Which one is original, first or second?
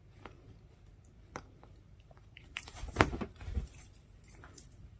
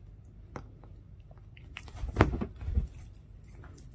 second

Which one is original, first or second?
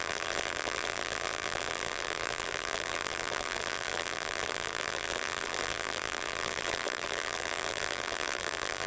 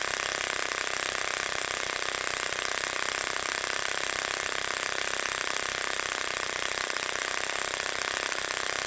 second